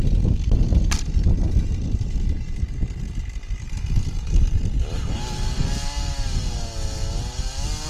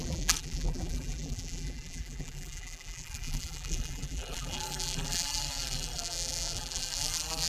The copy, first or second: second